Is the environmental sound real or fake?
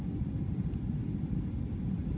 real